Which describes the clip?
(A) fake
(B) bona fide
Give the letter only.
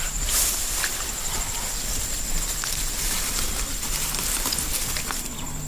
B